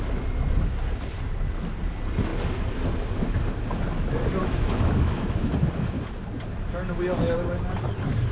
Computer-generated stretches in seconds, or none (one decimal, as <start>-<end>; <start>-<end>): 4.4-5.5